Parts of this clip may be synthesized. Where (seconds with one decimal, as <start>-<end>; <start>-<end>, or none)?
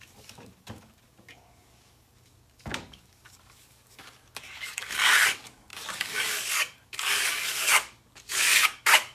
0.0-9.1